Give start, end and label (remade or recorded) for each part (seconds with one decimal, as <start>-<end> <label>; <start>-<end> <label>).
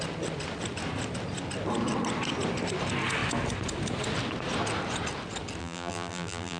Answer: 0.0-5.6 recorded; 5.6-6.6 remade